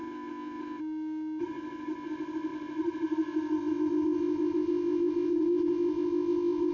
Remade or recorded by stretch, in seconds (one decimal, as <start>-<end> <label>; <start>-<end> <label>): 0.0-0.8 remade; 0.8-1.4 recorded; 1.4-6.7 remade